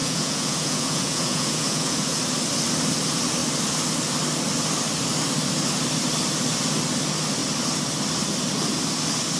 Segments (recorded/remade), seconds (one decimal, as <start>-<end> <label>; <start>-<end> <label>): 0.0-2.2 remade; 2.2-9.4 recorded